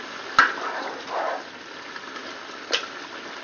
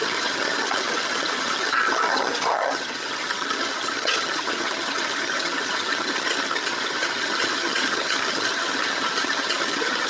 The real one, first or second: first